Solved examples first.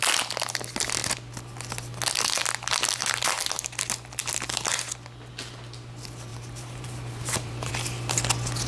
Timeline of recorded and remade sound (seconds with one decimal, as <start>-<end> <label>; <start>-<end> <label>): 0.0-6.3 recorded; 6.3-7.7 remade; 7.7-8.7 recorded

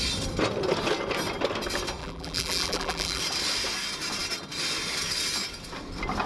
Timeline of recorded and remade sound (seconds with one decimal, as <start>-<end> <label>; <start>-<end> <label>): 0.0-2.0 recorded; 2.0-3.2 remade; 3.2-6.3 recorded

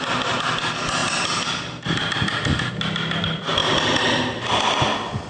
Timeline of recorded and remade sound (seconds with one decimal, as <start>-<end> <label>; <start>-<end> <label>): 0.0-5.3 recorded

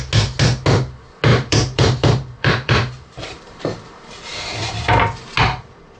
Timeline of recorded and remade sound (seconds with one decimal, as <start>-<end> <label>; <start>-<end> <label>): 0.0-1.3 recorded; 1.3-3.6 remade; 3.6-6.0 recorded